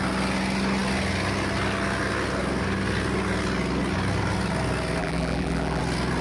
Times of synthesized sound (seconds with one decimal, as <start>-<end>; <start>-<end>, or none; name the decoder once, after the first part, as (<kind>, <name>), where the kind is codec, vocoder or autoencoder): 5.0-5.8 (vocoder, BigVGAN v2)

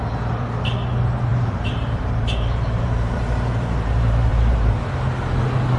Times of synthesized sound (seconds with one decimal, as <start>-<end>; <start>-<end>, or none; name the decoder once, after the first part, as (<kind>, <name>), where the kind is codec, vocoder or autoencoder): 1.3-4.8 (vocoder, BigVGAN v2)

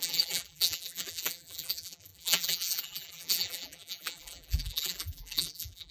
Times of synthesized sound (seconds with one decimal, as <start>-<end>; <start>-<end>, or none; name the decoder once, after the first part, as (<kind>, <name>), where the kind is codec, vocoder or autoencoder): 0.0-5.9 (vocoder, BigVGAN v2)

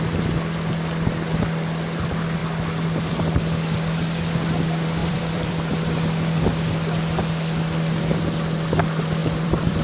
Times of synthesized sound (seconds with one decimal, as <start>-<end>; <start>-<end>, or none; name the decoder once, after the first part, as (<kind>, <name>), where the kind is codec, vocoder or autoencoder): 5.0-5.7 (vocoder, BigVGAN v2); 9.2-9.8

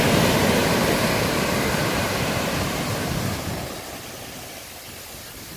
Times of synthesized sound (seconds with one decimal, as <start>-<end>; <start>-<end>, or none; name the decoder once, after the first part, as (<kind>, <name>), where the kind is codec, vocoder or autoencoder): 0.6-3.5 (vocoder, BigVGAN v2)

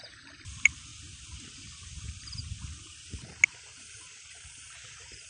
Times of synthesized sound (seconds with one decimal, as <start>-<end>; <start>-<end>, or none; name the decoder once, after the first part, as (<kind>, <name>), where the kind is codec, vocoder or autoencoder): 0.0-0.9 (vocoder, BigVGAN v2); 2.0-2.4; 3.8-5.3

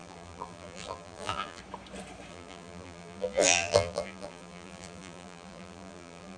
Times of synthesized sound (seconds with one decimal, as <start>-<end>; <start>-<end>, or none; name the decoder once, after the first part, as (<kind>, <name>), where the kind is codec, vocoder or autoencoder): 0.0-1.6 (vocoder, BigVGAN v2); 2.3-6.4

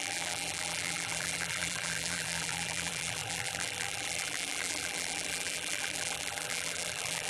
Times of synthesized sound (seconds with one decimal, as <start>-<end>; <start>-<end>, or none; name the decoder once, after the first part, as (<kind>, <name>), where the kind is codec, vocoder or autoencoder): 0.0-7.3 (vocoder, BigVGAN v2)